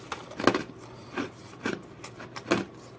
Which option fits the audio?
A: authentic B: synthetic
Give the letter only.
A